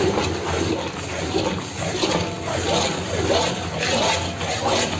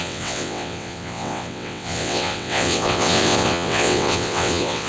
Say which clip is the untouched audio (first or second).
first